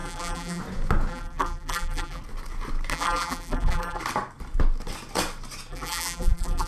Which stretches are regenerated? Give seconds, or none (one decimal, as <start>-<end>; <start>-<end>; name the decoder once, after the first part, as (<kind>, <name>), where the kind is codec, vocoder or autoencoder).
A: 0.0-0.6 (vocoder, BigVGAN v2); 1.1-2.2; 2.9-4.0; 5.7-6.7